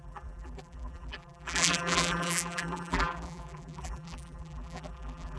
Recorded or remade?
remade